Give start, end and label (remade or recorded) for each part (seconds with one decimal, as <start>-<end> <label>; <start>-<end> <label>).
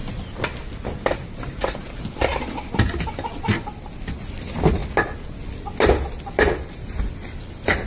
0.0-7.9 recorded